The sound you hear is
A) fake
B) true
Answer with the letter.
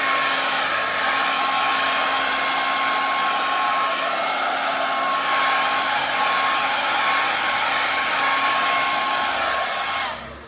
B